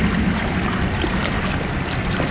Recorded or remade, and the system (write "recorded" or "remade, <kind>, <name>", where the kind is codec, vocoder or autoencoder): recorded